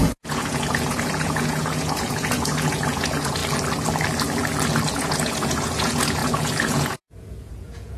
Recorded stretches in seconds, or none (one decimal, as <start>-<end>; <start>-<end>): 3.4-4.9